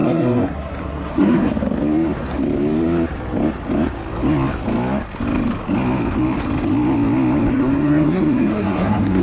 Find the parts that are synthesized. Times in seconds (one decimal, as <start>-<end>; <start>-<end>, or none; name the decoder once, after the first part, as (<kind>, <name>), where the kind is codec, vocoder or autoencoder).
0.0-1.5 (codec, SNAC); 7.5-9.2